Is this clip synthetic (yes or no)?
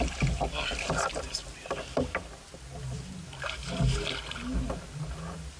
no